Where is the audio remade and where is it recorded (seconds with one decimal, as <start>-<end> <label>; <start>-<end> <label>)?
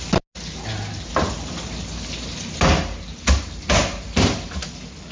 0.0-5.1 recorded